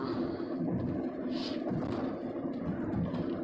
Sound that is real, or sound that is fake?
real